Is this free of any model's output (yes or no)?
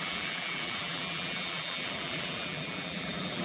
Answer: no